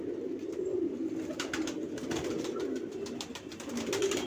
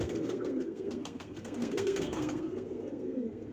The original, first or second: first